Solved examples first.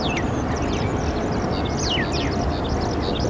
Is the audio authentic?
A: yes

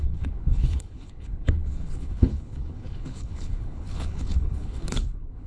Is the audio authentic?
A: no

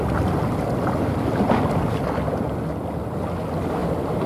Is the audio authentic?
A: yes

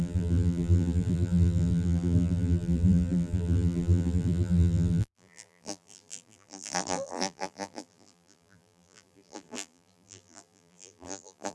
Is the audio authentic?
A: no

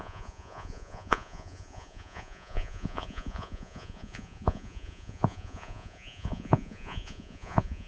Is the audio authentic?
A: no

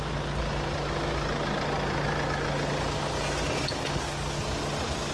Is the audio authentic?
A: yes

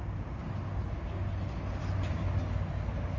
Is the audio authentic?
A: yes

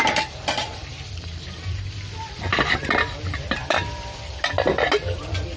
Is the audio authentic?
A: no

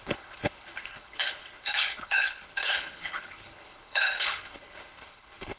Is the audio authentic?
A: no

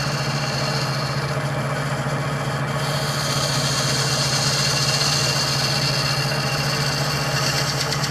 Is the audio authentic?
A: yes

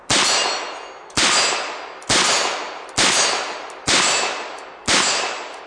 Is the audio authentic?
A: yes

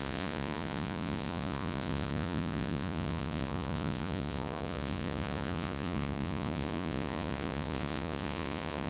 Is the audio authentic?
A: no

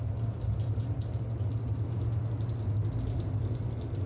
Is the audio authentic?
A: yes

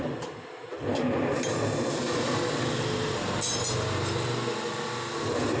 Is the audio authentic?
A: yes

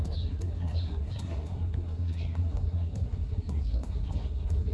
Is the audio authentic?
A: no